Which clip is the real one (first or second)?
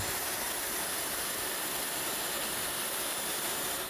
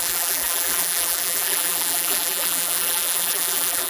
first